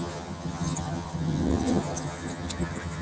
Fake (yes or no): yes